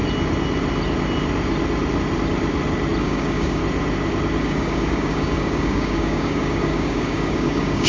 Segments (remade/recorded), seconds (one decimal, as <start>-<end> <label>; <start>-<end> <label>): 0.0-3.0 recorded; 3.0-3.6 remade; 3.6-4.4 recorded; 4.4-7.9 remade